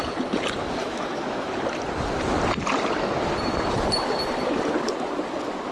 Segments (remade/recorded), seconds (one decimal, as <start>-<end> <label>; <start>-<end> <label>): 0.0-0.8 recorded; 0.8-1.5 remade; 1.5-5.7 recorded